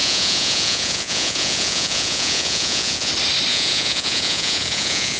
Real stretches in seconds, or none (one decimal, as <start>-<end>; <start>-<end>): 3.1-3.5